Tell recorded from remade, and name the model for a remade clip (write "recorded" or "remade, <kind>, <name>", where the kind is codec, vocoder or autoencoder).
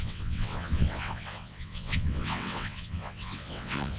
remade, vocoder, WaveNeXt